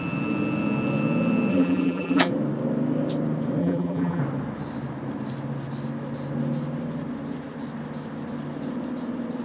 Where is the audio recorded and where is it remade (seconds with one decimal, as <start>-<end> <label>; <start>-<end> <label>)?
0.0-1.5 recorded; 1.5-2.3 remade; 2.3-3.6 recorded; 3.6-4.2 remade; 4.2-9.4 recorded